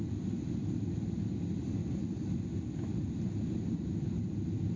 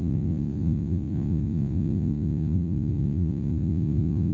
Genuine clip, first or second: first